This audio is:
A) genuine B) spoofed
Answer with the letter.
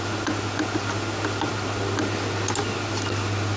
A